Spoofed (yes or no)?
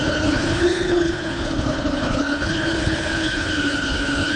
yes